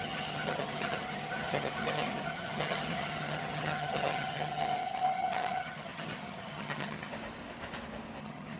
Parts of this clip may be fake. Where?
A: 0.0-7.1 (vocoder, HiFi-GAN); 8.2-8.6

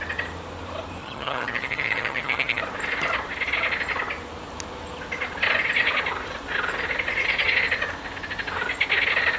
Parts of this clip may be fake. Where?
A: 1.0-2.6 (vocoder, HiFi-GAN)